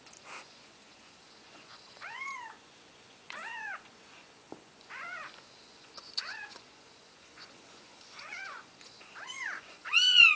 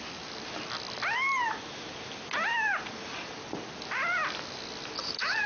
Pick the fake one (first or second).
first